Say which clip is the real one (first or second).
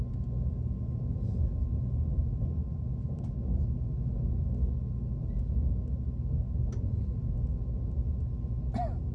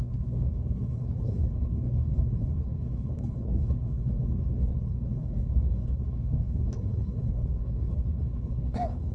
first